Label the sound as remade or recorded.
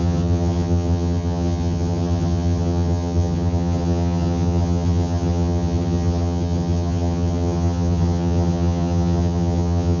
remade